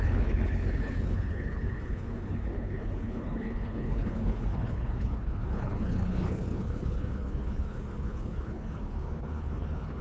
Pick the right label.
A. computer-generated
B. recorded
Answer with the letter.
A